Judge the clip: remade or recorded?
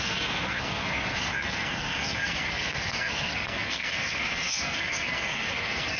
remade